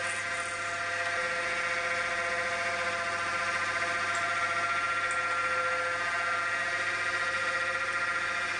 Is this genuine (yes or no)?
yes